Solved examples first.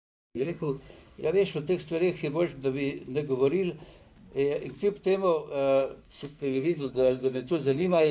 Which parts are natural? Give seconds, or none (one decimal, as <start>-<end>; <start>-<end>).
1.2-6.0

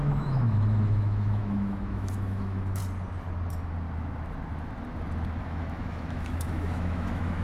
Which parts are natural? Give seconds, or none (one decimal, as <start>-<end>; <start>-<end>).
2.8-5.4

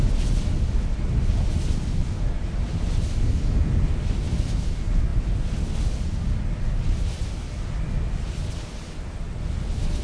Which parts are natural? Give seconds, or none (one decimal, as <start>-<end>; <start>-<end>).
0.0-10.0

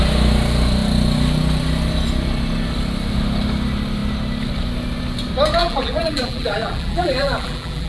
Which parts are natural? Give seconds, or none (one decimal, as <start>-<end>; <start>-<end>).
0.0-5.6